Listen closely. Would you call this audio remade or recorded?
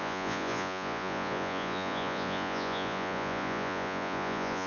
remade